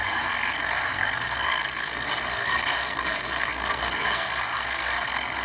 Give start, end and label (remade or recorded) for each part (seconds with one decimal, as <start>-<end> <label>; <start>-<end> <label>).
0.0-5.4 remade